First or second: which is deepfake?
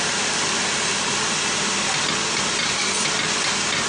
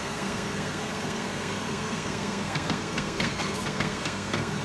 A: second